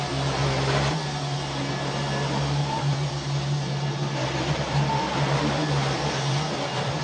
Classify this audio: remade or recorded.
recorded